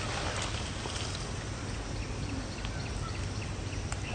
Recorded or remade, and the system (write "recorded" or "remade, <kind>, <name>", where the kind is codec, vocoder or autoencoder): recorded